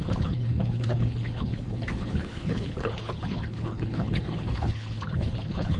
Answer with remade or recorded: remade